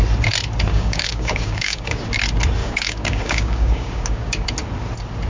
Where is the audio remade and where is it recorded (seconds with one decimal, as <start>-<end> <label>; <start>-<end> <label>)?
0.0-0.7 recorded; 0.7-2.0 remade; 2.0-2.6 recorded; 2.6-4.5 remade; 4.5-5.3 recorded